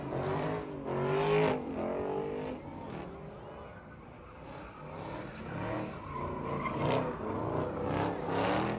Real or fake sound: real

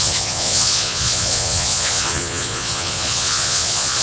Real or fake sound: fake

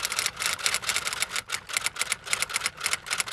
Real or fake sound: real